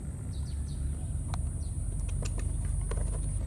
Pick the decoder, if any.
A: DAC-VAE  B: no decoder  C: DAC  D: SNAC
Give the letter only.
B